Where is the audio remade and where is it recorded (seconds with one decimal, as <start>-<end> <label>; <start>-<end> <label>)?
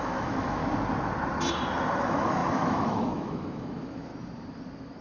0.0-0.6 remade; 0.6-2.0 recorded; 2.0-4.1 remade; 4.1-5.0 recorded